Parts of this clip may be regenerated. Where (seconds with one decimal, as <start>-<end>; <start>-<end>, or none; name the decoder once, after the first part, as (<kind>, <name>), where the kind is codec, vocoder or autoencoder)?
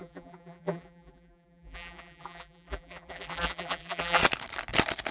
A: 0.0-4.2 (vocoder, BigVGAN v2)